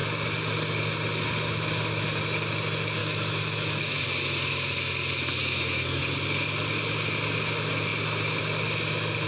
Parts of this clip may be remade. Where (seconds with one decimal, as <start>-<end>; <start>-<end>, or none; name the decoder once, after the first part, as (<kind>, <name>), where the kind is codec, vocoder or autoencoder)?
3.0-4.0 (autoencoder, DAC-VAE); 5.4-6.0